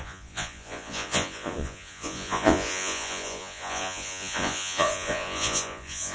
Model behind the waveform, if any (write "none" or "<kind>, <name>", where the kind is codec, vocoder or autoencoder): vocoder, Vocos